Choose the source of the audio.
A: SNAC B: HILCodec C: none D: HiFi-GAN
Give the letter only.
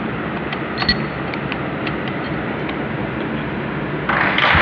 C